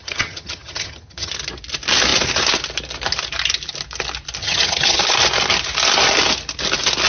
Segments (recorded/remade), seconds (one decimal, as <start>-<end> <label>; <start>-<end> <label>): 0.0-1.3 remade; 1.3-4.4 recorded; 4.4-5.0 remade; 5.0-7.1 recorded